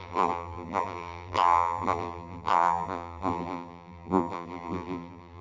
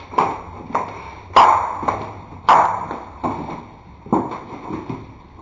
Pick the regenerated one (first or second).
first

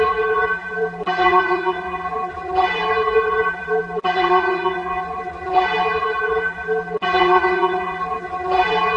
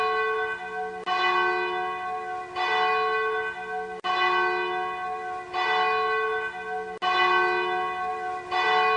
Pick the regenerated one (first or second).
first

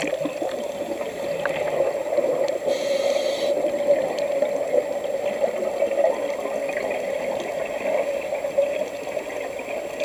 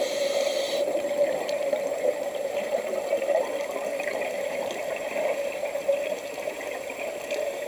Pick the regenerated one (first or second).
second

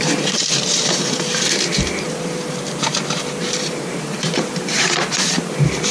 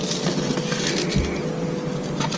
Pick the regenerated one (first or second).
first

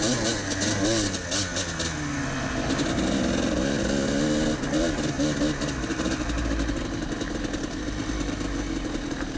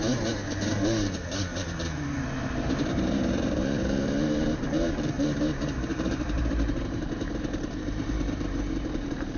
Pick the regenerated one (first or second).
second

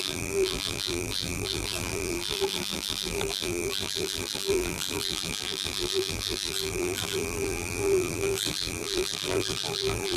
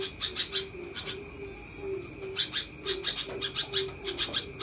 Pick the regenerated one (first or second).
first